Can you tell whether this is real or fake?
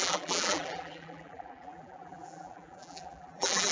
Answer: fake